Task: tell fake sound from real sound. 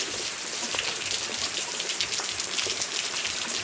fake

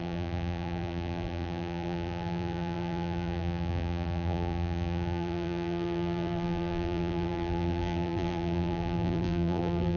fake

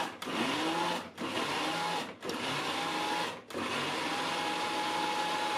real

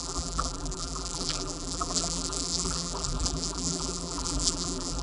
fake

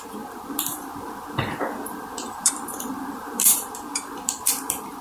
fake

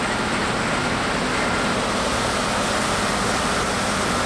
real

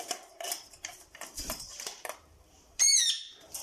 fake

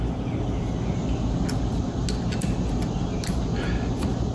real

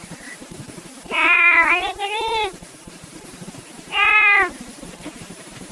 fake